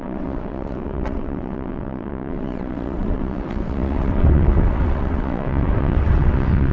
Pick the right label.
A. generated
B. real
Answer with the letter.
A